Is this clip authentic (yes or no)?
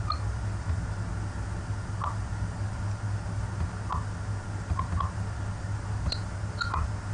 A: yes